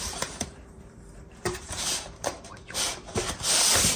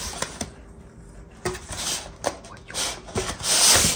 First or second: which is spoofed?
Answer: first